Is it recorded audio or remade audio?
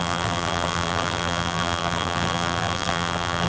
remade